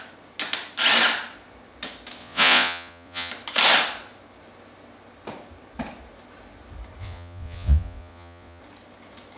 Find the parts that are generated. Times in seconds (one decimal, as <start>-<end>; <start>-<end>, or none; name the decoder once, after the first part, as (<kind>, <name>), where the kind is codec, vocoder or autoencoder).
2.2-3.3 (vocoder, Vocos); 7.0-8.6

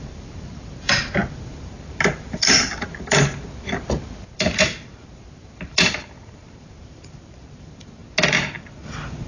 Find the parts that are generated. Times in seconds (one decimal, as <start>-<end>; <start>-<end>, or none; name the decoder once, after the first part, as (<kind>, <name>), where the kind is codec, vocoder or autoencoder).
0.0-8.0 (vocoder, BigVGAN v2)

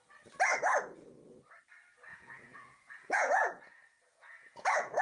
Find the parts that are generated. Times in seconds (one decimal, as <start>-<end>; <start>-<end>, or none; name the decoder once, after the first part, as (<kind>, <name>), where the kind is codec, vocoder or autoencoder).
2.1-5.0 (vocoder, Vocos)

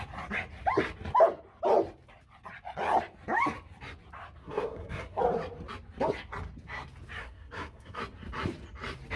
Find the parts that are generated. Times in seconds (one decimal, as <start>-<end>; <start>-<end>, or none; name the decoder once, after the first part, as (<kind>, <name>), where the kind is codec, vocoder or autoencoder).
4.4-5.2 (codec, SNAC); 7.2-8.0

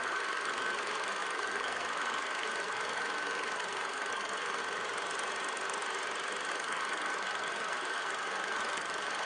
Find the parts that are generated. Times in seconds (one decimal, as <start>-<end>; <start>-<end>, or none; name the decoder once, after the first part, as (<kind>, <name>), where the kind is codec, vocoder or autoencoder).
0.0-4.6 (codec, SNAC); 6.5-9.3

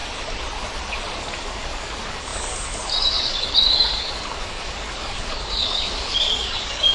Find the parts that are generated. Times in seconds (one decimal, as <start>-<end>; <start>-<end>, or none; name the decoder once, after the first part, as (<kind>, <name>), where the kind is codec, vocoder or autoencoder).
1.2-6.9 (codec, DAC)

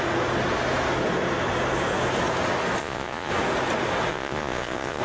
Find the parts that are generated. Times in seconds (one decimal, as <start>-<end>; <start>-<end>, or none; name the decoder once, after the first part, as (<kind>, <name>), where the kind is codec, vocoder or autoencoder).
2.8-3.3 (vocoder, Vocos); 4.1-5.0

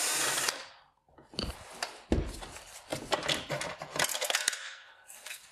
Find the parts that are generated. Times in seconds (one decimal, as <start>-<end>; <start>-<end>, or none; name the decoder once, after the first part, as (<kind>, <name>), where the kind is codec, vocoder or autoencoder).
4.1-5.5 (codec, SNAC)